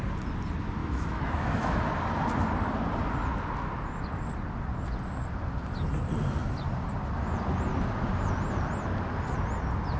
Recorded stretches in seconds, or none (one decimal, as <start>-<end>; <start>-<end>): 0.0-0.8; 1.8-10.0